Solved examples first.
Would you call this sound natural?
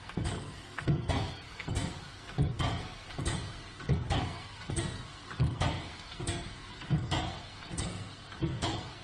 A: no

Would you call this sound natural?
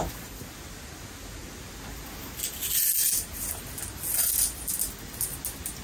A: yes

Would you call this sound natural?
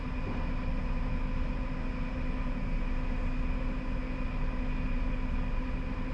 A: yes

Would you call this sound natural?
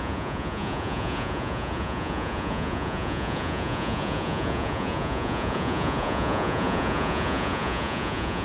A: no